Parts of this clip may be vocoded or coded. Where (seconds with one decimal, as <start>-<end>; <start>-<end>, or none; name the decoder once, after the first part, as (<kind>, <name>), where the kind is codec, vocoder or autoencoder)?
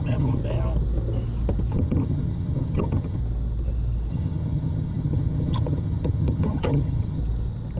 0.0-0.4 (vocoder, HiFi-GAN); 1.7-3.2; 4.1-7.2